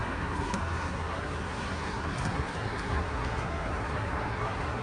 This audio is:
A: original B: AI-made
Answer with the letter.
B